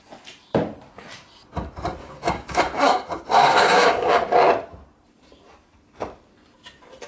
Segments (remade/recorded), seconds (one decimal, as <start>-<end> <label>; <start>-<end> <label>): 0.0-2.0 recorded; 2.0-2.6 remade; 2.6-3.4 recorded; 3.4-4.2 remade; 4.2-7.1 recorded